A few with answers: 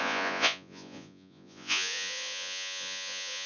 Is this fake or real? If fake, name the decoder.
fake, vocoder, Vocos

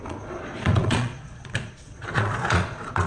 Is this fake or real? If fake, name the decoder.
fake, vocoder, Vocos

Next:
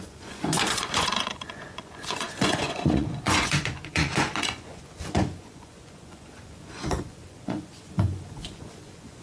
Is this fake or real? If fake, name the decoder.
fake, vocoder, Vocos